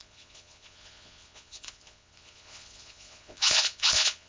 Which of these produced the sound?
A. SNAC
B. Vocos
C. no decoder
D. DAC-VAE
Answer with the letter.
B